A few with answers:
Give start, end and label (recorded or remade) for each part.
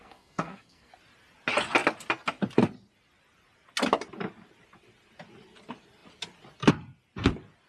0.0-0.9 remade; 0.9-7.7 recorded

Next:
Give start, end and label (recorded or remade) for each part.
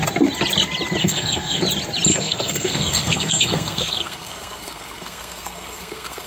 0.0-1.0 recorded; 1.0-1.6 remade; 1.6-2.1 recorded; 2.1-6.3 remade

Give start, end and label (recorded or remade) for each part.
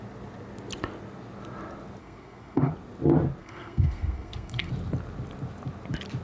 0.0-2.0 recorded; 2.0-2.7 remade; 2.7-3.4 recorded; 3.4-4.7 remade; 4.7-6.2 recorded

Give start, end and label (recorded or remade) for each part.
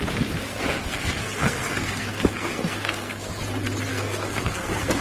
0.0-0.4 recorded; 0.4-3.4 remade; 3.4-3.9 recorded; 3.9-5.0 remade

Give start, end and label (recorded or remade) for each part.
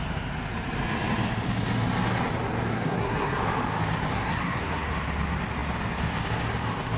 0.0-2.7 recorded; 2.7-3.4 remade; 3.4-4.1 recorded; 4.1-4.9 remade; 4.9-7.0 recorded